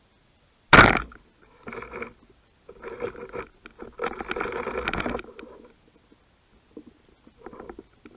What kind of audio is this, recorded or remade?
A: recorded